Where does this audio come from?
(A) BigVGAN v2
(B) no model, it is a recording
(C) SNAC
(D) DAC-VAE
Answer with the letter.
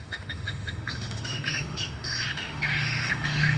D